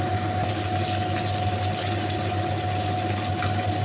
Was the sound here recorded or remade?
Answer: remade